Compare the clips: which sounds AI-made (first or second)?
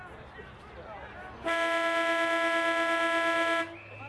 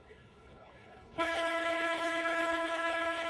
second